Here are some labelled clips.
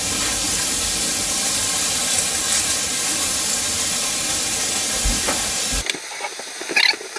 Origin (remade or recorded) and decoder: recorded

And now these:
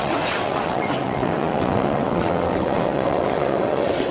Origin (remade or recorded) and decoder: remade, vocoder, WaveNeXt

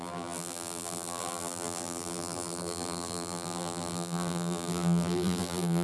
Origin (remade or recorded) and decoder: remade, vocoder, BigVGAN v2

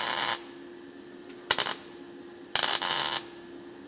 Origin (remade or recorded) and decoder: recorded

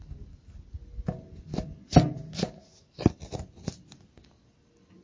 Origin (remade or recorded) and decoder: recorded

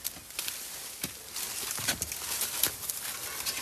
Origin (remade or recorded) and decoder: recorded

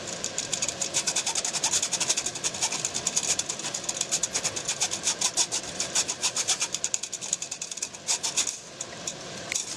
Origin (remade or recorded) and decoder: recorded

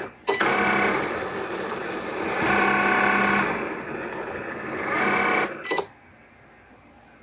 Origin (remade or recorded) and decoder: recorded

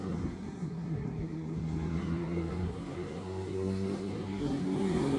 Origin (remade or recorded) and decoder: remade, codec, SNAC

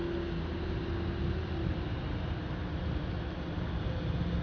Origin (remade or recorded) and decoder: recorded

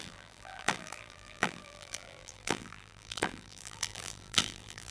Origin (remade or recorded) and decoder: remade, vocoder, BigVGAN v2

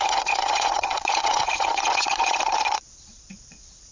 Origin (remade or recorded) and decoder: remade, vocoder, Vocos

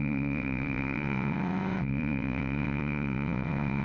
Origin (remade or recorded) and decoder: remade, vocoder, WaveNeXt